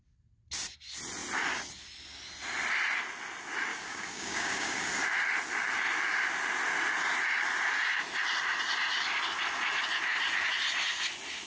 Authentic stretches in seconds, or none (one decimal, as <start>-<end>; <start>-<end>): 0.0-3.7; 4.9-11.5